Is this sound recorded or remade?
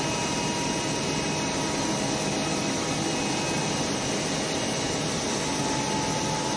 recorded